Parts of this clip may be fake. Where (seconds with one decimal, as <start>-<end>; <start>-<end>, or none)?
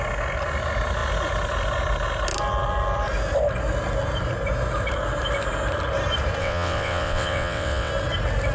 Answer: 6.4-7.9